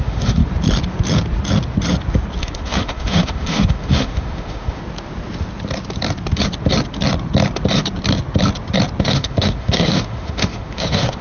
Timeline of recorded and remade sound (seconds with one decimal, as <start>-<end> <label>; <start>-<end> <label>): 0.0-0.4 remade; 0.4-2.4 recorded; 2.4-4.8 remade; 4.8-9.0 recorded; 9.0-11.2 remade